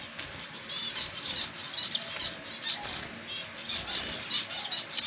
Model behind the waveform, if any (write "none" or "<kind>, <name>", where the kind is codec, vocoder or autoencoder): none